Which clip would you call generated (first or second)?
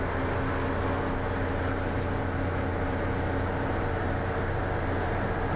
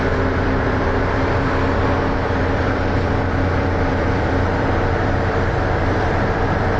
second